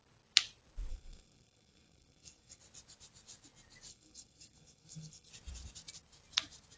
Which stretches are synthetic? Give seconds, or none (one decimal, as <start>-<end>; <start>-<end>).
0.9-2.6; 3.9-5.3